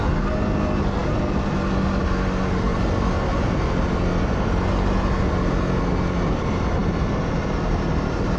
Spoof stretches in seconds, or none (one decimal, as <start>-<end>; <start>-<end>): 6.8-8.4